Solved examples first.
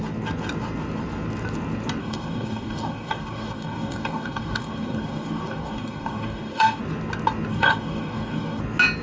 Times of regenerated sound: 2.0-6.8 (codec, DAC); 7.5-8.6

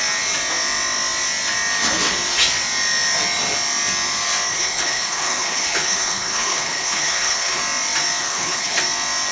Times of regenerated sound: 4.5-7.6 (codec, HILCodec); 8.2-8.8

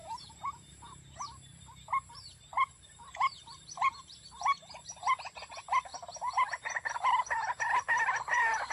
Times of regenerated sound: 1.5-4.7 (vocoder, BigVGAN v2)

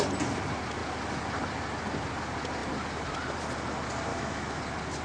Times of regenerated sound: 4.1-4.6 (autoencoder, DAC-VAE)

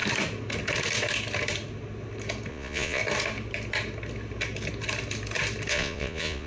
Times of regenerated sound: 2.5-3.0 (vocoder, Vocos); 5.7-6.5

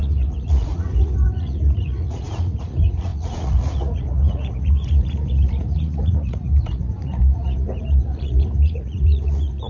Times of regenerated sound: 0.0-9.7 (vocoder, Vocos)

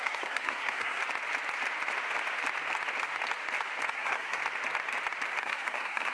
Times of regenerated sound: 0.0-1.0 (codec, SNAC); 3.9-4.4; 5.4-6.1

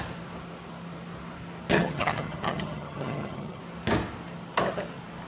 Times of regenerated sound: 1.7-3.6 (vocoder, HiFi-GAN)